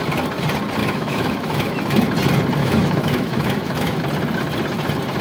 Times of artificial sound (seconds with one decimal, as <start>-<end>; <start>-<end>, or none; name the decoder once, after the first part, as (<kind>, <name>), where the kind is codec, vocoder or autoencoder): 0.8-2.1 (autoencoder, DAC-VAE); 2.6-4.0